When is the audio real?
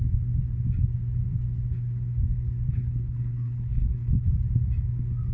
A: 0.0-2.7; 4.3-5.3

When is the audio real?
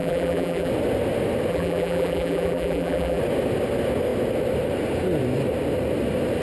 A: 0.7-1.5; 3.2-6.4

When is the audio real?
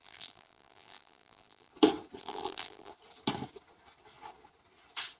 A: 1.7-2.2; 2.9-5.2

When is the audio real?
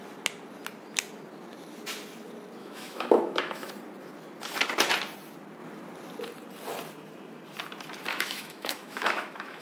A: 0.0-2.6; 3.7-8.1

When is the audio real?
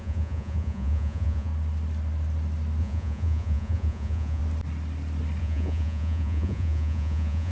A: 1.5-2.8; 4.4-5.4